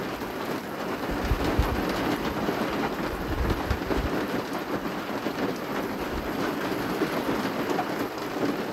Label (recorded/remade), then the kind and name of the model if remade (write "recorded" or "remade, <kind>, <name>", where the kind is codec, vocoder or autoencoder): recorded